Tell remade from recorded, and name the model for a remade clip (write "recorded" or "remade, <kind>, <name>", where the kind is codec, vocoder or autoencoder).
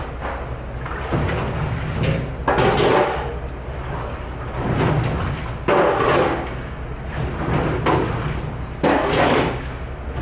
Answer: recorded